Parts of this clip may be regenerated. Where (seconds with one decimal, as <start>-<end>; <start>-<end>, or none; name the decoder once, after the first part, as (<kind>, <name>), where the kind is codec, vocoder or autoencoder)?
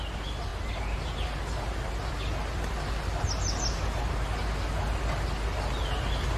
none